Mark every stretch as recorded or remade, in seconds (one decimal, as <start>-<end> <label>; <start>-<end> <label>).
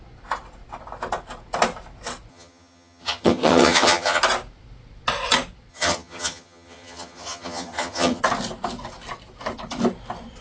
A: 0.0-2.3 recorded; 2.3-4.2 remade; 4.2-5.7 recorded; 5.7-8.2 remade; 8.2-10.4 recorded